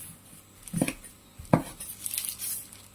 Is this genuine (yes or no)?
yes